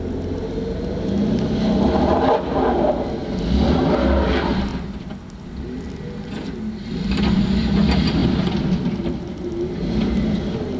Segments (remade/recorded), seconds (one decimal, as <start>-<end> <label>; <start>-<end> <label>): 0.0-10.8 recorded